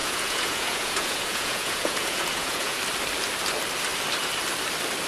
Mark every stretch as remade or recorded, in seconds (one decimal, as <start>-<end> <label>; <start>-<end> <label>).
0.0-2.8 remade; 2.8-5.1 recorded